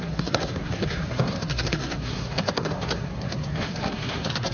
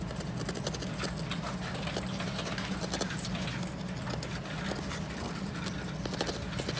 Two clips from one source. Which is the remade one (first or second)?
first